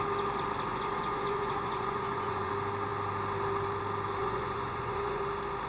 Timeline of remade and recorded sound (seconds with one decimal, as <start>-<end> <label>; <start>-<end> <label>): 0.0-0.7 recorded; 0.7-2.5 remade; 2.5-4.2 recorded; 4.2-5.2 remade; 5.2-5.7 recorded